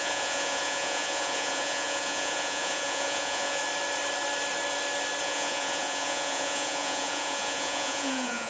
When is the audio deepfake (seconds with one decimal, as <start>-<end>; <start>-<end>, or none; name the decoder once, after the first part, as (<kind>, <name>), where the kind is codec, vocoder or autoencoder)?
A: 0.0-3.6 (vocoder, Vocos); 5.2-8.5